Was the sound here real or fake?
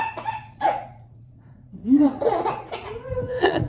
fake